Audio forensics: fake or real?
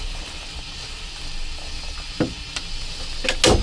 real